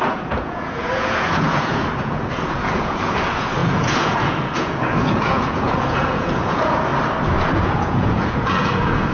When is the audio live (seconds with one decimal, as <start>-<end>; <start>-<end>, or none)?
6.9-7.4